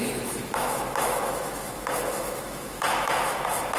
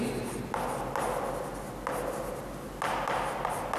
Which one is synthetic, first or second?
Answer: first